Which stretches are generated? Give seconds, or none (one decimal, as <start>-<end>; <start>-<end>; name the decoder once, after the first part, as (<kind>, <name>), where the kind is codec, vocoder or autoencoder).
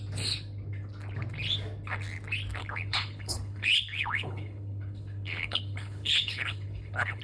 2.6-7.2 (codec, HILCodec)